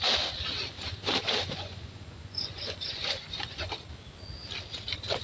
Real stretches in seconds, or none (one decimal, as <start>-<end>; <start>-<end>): 0.0-0.9; 3.7-5.2

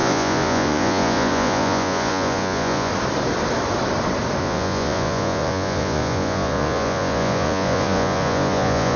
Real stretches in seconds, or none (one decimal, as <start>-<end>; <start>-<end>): 2.9-4.4